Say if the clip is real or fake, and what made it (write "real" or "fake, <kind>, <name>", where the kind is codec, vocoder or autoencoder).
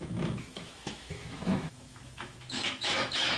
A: fake, autoencoder, DAC-VAE